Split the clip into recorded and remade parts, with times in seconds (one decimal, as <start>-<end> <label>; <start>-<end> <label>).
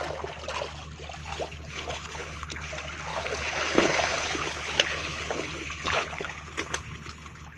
0.0-1.2 recorded; 1.2-2.7 remade; 2.7-3.1 recorded; 3.1-7.6 remade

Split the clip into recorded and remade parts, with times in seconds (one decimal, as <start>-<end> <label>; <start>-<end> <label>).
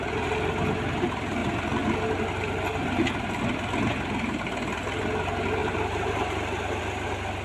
0.0-5.6 recorded; 5.6-6.8 remade; 6.8-7.4 recorded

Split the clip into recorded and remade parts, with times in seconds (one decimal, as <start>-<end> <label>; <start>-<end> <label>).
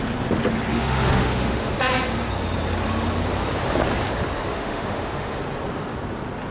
0.0-0.7 recorded; 0.7-1.7 remade; 1.7-4.5 recorded; 4.5-5.4 remade; 5.4-6.5 recorded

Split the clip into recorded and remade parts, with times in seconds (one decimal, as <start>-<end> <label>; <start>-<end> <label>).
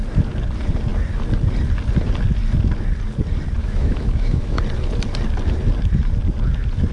0.0-3.6 recorded; 3.6-4.6 remade; 4.6-6.9 recorded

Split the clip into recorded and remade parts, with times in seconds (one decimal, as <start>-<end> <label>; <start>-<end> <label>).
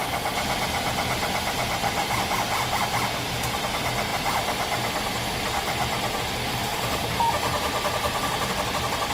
0.0-6.7 recorded; 6.7-8.2 remade; 8.2-9.1 recorded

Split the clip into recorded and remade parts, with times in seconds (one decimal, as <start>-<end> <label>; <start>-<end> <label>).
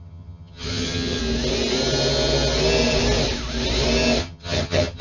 0.0-1.2 remade; 1.2-4.2 recorded; 4.2-5.0 remade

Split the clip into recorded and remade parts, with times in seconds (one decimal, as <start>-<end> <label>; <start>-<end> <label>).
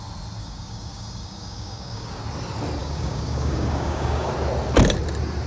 0.0-0.4 recorded; 0.4-2.2 remade; 2.2-2.8 recorded; 2.8-4.3 remade; 4.3-5.5 recorded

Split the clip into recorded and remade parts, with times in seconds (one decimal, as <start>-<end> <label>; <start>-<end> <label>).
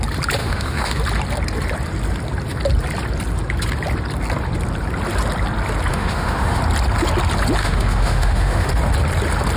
0.0-0.4 recorded; 0.4-1.0 remade; 1.0-5.9 recorded; 5.9-6.6 remade; 6.6-7.6 recorded; 7.6-8.7 remade; 8.7-9.6 recorded